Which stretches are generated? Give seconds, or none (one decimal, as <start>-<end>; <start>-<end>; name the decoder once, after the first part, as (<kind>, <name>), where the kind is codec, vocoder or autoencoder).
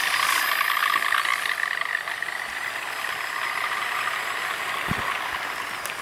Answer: 1.3-4.9 (vocoder, BigVGAN v2)